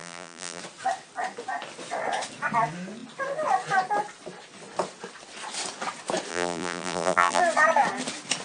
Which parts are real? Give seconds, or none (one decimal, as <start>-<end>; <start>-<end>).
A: 0.6-6.3; 7.4-8.4